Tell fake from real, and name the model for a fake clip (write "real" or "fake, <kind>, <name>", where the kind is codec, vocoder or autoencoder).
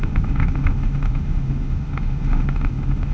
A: fake, autoencoder, DAC-VAE